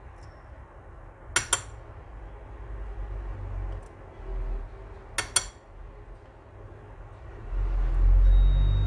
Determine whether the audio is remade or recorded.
recorded